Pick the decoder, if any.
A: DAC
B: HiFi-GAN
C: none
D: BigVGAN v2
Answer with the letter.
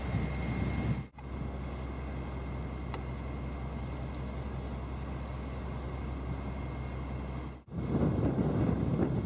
C